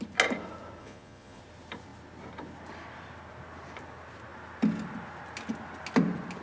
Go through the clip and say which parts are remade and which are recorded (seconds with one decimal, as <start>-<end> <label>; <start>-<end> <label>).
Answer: 0.0-0.8 recorded; 0.8-1.4 remade; 1.4-6.4 recorded